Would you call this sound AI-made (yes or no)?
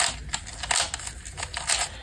no